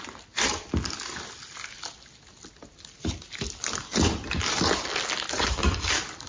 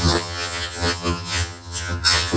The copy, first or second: second